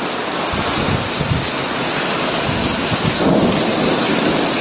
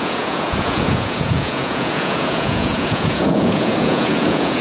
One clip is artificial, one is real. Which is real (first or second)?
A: first